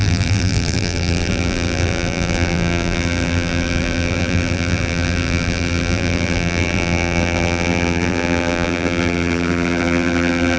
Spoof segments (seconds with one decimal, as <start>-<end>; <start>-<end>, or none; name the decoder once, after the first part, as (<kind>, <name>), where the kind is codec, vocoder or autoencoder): 0.0-10.6 (vocoder, BigVGAN v2)